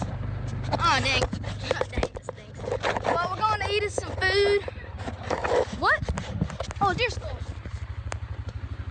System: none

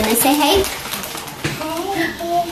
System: vocoder, BigVGAN v2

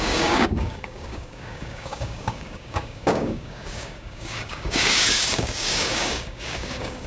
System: codec, DAC